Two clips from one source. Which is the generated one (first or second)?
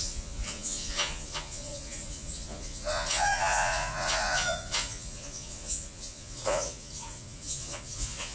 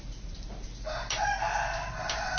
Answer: first